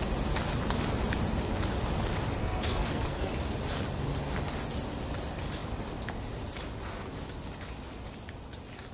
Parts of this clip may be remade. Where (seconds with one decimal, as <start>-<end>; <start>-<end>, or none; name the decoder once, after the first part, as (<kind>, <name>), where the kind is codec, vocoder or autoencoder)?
2.4-3.3 (codec, SNAC)